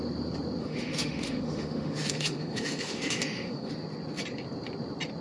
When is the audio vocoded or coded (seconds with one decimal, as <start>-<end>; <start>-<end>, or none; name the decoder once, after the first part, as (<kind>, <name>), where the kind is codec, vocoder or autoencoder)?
0.6-3.7 (autoencoder, DAC-VAE)